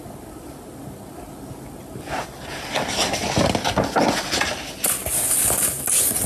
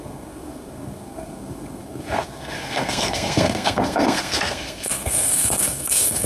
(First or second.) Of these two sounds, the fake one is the second